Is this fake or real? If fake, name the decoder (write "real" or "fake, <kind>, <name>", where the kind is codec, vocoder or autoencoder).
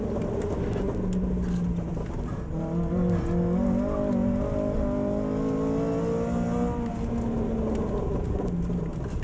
real